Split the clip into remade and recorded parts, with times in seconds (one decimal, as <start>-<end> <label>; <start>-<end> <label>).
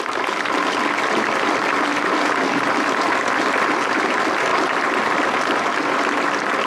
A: 0.0-6.7 recorded